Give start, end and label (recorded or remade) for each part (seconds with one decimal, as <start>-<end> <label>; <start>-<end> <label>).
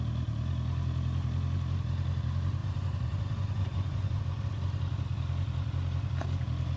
0.0-2.6 recorded; 2.6-4.2 remade; 4.2-6.8 recorded